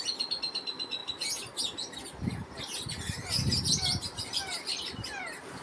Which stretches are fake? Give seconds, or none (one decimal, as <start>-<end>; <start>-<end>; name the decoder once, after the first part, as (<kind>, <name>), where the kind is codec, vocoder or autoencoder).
4.3-5.1 (vocoder, BigVGAN v2)